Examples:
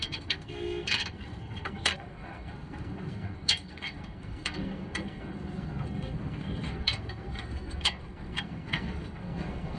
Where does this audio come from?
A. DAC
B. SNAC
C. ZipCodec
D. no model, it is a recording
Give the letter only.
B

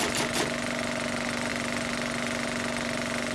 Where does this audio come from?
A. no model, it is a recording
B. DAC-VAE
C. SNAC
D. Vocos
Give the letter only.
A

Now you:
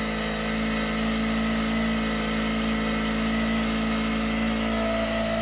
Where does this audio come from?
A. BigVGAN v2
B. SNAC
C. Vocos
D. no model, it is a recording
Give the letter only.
D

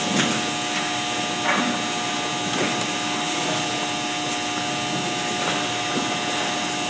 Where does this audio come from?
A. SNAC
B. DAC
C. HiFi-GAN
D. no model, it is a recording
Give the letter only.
D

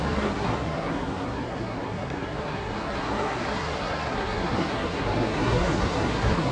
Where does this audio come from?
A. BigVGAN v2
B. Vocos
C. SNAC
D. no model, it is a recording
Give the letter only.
C